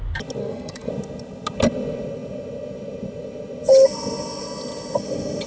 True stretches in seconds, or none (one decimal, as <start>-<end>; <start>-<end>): 0.0-0.4; 0.9-5.5